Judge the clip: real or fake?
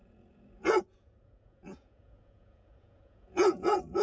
fake